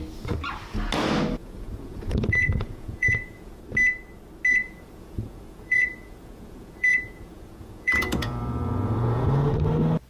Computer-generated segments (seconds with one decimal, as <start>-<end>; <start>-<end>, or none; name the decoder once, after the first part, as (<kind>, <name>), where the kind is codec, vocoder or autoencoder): 1.4-3.6 (vocoder, Vocos); 4.5-9.5